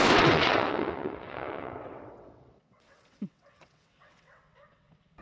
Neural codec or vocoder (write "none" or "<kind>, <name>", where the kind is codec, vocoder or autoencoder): vocoder, WaveNeXt